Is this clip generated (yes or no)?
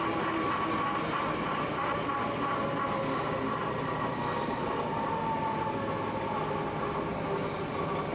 no